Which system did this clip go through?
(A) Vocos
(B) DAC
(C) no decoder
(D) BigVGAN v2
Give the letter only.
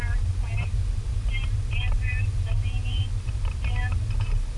C